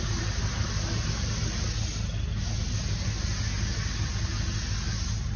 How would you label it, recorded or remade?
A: recorded